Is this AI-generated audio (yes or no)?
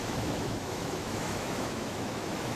yes